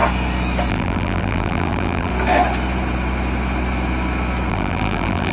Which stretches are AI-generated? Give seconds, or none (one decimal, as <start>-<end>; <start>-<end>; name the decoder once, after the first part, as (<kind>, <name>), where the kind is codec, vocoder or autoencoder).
0.7-2.1 (vocoder, BigVGAN v2); 4.5-5.3

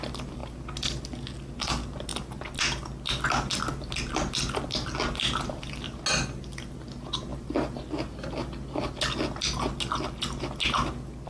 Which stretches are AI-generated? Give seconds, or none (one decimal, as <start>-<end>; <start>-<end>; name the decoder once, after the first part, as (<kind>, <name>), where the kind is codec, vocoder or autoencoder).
none